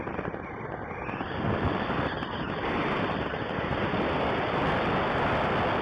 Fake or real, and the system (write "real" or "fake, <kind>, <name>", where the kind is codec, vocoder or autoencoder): real